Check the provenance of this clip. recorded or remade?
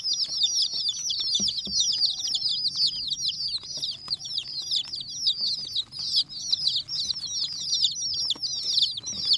recorded